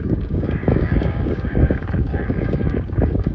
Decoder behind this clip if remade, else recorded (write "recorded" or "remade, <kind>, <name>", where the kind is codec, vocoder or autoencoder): remade, codec, DAC